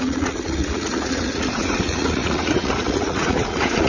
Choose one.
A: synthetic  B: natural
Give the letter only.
A